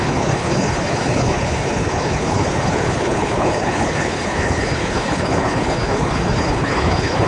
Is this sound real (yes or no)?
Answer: no